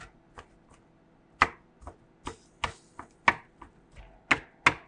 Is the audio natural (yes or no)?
yes